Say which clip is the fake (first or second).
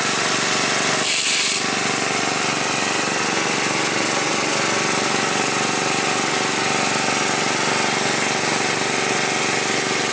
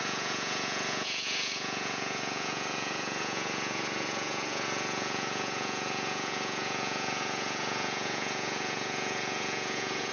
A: second